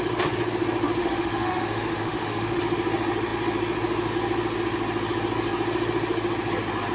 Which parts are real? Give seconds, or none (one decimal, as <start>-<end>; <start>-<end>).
0.0-1.0; 2.6-6.9